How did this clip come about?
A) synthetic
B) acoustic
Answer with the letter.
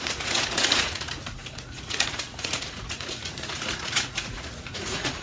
A